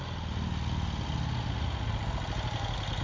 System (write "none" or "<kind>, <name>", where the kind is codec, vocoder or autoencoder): none